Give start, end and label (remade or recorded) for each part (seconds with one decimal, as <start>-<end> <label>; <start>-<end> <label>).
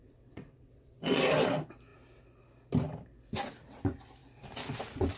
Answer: 0.0-1.2 remade; 1.2-5.2 recorded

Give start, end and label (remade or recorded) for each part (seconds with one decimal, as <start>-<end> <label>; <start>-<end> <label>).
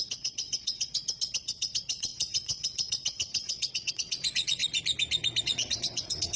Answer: 0.0-4.6 remade; 4.6-5.4 recorded; 5.4-6.4 remade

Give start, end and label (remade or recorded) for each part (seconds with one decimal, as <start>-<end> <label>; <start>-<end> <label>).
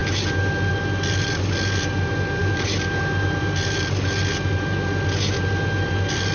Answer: 0.0-6.3 recorded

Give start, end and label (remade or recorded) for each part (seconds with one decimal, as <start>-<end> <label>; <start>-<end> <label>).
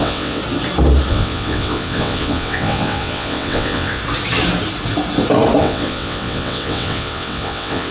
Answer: 0.0-0.4 remade; 0.4-1.1 recorded; 1.1-4.0 remade; 4.0-5.6 recorded; 5.6-7.9 remade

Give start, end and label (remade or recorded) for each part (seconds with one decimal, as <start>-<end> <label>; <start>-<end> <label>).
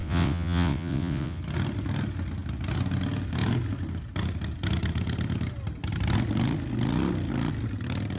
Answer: 0.0-1.4 remade; 1.4-8.2 recorded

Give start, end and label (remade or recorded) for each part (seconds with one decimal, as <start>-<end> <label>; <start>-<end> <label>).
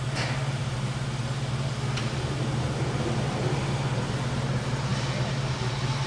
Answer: 0.0-6.1 recorded